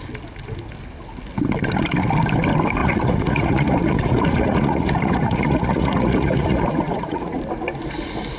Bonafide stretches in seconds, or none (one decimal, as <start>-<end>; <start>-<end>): 0.0-2.8; 7.4-8.4